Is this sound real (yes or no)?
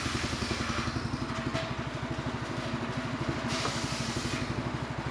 yes